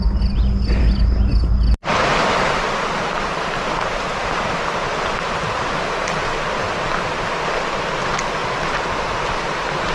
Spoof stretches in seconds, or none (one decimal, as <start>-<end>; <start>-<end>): 1.9-6.0